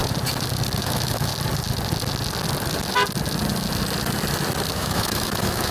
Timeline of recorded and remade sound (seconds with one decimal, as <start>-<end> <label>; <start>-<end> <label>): 0.0-0.8 recorded; 0.8-1.3 remade; 1.3-4.7 recorded; 4.7-5.7 remade